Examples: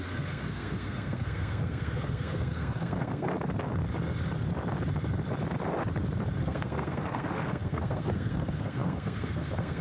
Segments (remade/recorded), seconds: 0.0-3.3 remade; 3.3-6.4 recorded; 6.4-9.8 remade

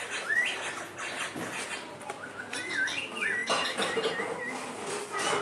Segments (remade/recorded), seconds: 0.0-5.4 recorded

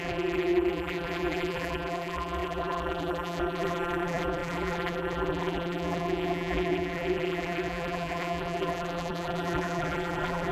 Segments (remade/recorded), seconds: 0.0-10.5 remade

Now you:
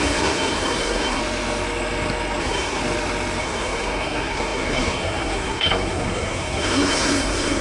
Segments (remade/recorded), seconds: 0.0-1.2 remade; 1.2-2.4 recorded; 2.4-2.8 remade; 2.8-3.4 recorded; 3.4-7.6 remade

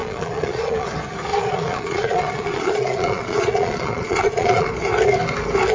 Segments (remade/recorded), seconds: 0.0-0.9 remade; 0.9-1.3 recorded; 1.3-4.7 remade; 4.7-5.7 recorded

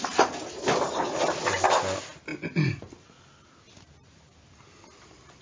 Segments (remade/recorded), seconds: 0.0-5.4 recorded